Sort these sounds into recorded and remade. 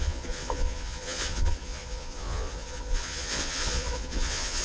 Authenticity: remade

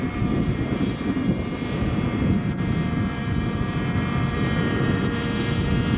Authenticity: recorded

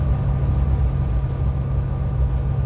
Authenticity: recorded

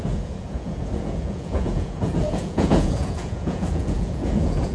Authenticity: remade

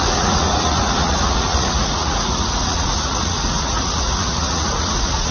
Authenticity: remade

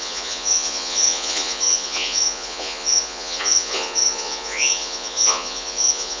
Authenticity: remade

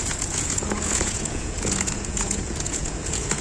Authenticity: remade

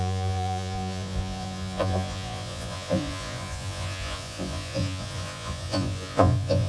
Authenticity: remade